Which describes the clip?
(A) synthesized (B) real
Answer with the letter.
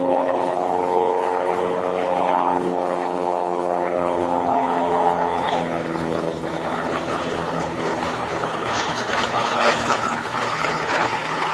A